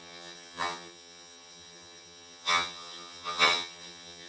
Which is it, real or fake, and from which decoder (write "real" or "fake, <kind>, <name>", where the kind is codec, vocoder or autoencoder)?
fake, vocoder, HiFi-GAN